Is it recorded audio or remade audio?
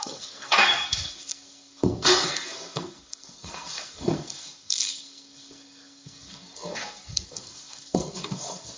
remade